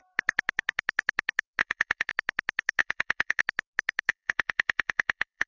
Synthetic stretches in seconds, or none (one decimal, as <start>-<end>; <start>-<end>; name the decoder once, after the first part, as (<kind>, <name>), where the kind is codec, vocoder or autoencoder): 1.6-2.1 (vocoder, Vocos); 2.8-3.4; 4.1-5.5